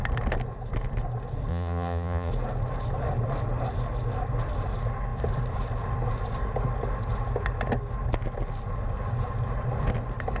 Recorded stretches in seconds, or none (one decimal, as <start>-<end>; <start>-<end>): 0.0-1.5; 2.3-10.4